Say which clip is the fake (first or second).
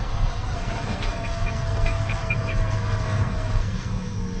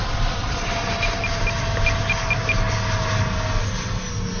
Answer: first